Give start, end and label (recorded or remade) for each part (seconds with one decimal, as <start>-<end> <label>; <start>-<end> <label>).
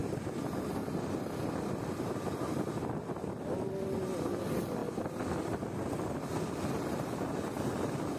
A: 0.0-8.2 recorded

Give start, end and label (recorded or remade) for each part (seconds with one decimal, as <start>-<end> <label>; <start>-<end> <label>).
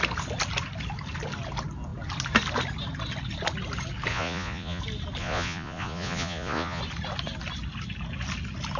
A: 0.0-4.1 recorded; 4.1-4.8 remade; 4.8-5.2 recorded; 5.2-6.8 remade; 6.8-8.8 recorded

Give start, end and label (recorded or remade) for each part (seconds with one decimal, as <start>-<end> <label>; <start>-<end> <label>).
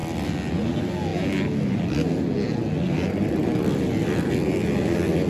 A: 0.0-5.3 recorded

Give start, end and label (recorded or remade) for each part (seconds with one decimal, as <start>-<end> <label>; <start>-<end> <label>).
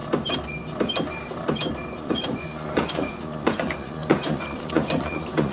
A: 0.0-2.0 recorded; 2.0-5.5 remade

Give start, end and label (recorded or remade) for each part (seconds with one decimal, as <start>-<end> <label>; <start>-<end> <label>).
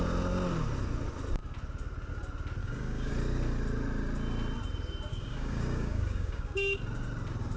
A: 0.0-2.6 recorded; 2.6-3.1 remade; 3.1-5.1 recorded; 5.1-6.8 remade; 6.8-7.6 recorded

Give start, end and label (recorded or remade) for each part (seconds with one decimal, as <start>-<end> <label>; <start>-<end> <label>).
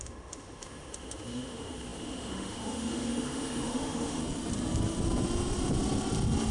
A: 0.0-4.2 remade; 4.2-6.5 recorded